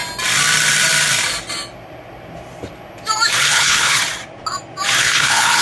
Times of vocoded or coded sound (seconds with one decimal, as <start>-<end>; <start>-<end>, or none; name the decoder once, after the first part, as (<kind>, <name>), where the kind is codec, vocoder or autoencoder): 3.4-4.0 (codec, HILCodec); 5.0-5.6